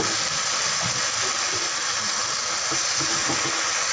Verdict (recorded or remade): recorded